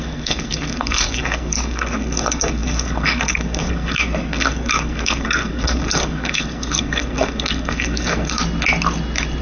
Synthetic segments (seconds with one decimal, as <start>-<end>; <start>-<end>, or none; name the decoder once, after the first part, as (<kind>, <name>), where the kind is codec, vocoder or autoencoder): 0.0-8.4 (codec, SNAC)